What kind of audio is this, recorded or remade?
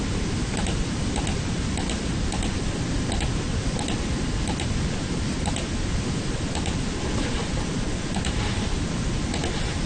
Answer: recorded